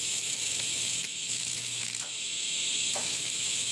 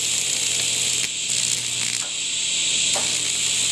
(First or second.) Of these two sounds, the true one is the second